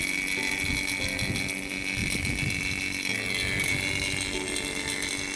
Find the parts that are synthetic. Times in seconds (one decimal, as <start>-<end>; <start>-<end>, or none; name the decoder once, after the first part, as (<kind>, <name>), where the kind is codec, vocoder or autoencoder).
none